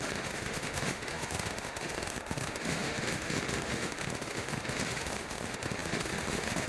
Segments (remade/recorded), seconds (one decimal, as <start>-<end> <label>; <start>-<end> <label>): 0.0-6.7 remade